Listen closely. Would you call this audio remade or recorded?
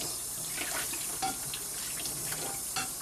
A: recorded